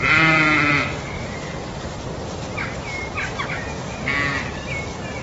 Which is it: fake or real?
real